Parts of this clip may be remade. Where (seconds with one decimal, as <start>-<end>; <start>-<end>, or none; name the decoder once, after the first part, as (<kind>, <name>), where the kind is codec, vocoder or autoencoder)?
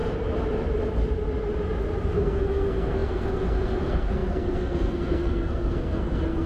2.1-6.5 (codec, SNAC)